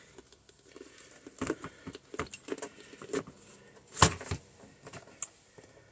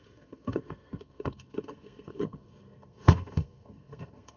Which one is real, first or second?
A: first